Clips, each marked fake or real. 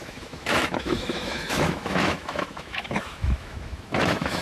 fake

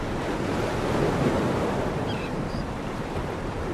fake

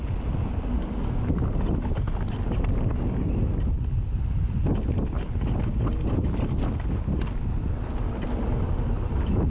real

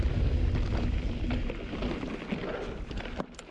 real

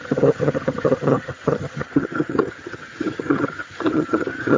fake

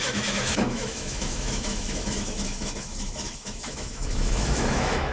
fake